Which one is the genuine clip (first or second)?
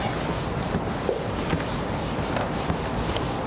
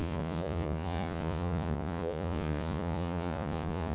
first